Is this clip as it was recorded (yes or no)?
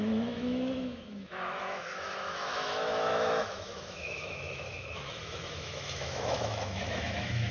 no